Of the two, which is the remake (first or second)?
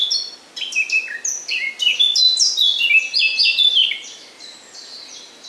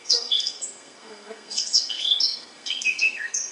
second